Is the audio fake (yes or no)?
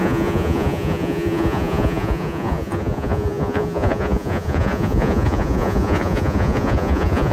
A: yes